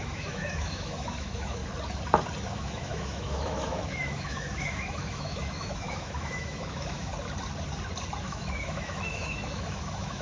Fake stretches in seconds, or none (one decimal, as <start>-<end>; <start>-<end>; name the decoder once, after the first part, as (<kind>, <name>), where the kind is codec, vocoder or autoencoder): 0.0-1.6 (autoencoder, DAC-VAE); 2.5-7.1; 8.2-10.2